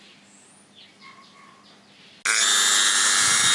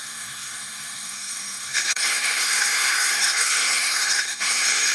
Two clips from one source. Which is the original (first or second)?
first